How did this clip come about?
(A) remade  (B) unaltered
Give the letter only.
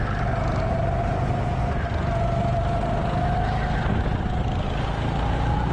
B